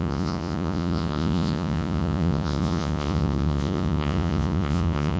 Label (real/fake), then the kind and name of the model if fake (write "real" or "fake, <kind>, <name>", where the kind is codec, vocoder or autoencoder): fake, vocoder, Vocos